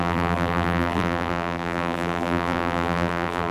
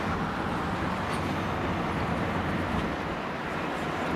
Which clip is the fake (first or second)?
first